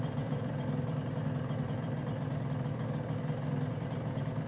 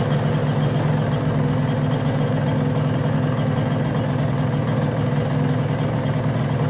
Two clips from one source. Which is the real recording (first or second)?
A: second